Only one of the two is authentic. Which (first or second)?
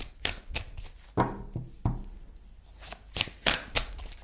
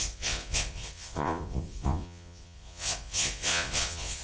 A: first